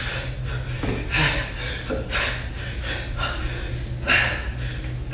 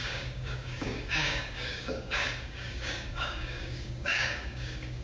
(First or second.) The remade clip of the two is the second